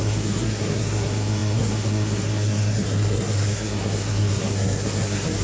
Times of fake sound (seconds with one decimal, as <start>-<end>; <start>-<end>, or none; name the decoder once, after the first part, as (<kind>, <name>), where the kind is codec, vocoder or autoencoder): 0.0-5.4 (codec, SNAC)